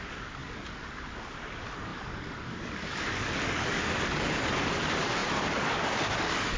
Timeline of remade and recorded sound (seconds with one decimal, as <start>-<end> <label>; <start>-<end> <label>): 0.0-6.6 remade